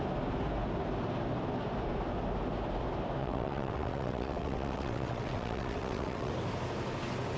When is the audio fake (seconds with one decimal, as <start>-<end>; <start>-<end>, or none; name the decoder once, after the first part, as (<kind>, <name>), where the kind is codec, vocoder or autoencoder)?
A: 3.2-6.3 (vocoder, WaveNeXt)